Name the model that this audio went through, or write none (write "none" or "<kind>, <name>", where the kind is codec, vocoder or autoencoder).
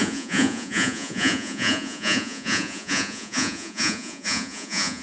vocoder, Vocos